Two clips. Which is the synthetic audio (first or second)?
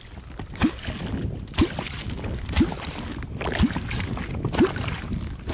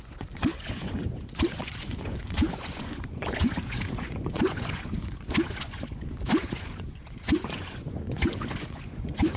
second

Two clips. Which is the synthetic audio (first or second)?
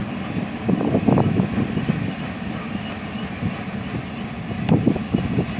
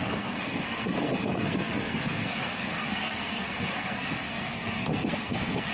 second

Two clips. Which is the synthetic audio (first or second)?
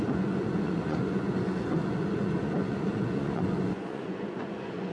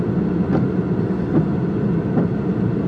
first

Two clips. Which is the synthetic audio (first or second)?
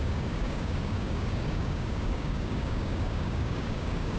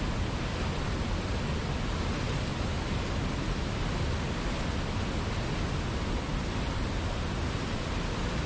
first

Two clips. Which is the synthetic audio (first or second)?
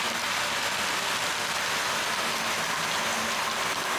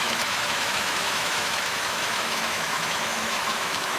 second